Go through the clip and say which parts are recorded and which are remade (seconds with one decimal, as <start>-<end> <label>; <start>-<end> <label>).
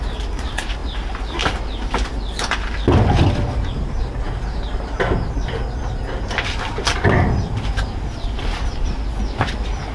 0.0-6.9 recorded; 6.9-8.9 remade; 8.9-9.9 recorded